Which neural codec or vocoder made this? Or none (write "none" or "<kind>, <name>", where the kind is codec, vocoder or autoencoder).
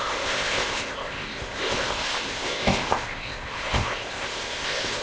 codec, ZipCodec